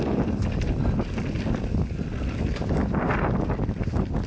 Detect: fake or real real